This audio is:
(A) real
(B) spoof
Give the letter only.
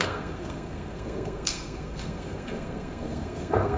B